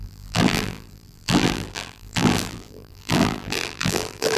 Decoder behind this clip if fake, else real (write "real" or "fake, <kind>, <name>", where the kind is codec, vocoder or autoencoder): fake, vocoder, BigVGAN v2